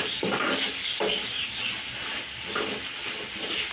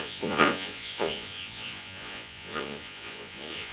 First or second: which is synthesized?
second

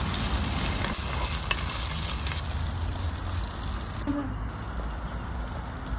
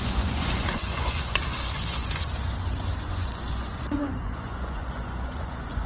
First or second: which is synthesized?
second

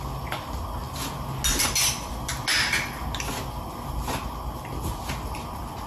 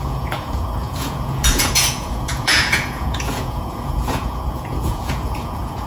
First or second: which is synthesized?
second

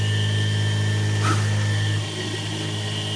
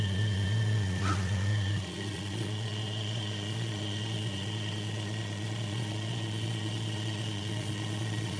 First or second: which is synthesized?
second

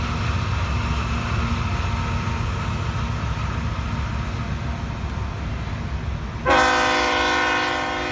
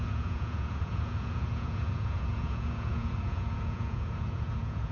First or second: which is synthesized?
second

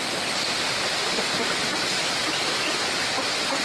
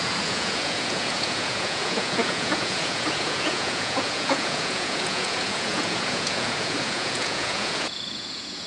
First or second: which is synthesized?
second